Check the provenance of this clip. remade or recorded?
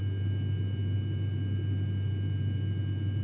recorded